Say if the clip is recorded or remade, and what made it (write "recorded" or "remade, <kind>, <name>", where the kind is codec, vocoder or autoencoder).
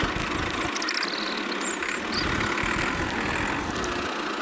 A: recorded